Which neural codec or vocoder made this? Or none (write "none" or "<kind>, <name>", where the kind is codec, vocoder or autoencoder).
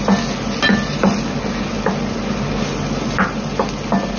none